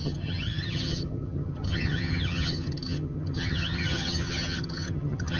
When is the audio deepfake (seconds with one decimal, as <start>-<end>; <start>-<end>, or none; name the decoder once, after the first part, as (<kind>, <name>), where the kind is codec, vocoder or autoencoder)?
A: 0.0-5.4 (vocoder, HiFi-GAN)